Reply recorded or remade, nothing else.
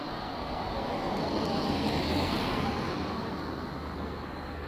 remade